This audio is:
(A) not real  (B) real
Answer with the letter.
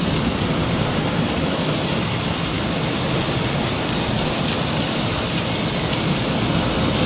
B